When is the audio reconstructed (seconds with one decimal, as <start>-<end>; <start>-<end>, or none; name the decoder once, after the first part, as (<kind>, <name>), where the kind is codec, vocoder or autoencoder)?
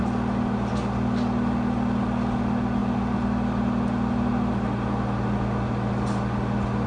none